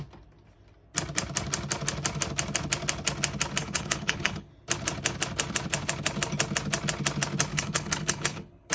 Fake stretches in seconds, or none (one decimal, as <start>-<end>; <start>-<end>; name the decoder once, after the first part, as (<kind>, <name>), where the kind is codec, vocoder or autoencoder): 3.6-4.5 (codec, HILCodec); 7.5-8.7